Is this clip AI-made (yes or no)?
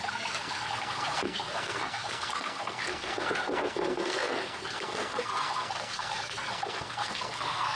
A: yes